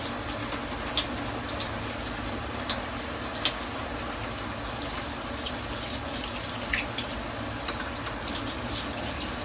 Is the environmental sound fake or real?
real